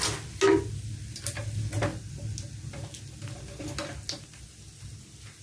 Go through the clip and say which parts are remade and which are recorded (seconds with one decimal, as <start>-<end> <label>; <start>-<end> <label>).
0.0-5.4 recorded